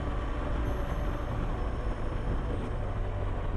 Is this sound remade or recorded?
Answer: recorded